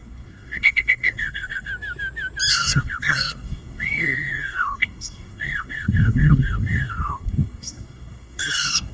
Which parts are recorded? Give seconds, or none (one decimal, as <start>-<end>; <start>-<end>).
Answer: 1.7-2.5